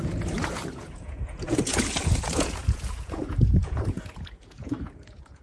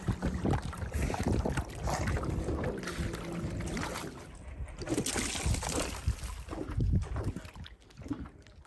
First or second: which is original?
second